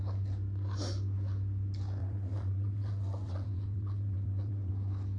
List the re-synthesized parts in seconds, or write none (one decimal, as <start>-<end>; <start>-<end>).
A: 2.0-4.7